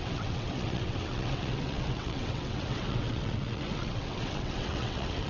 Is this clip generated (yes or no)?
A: yes